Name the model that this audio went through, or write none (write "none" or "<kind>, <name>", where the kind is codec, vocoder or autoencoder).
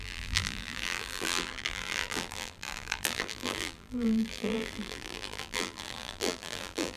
vocoder, BigVGAN v2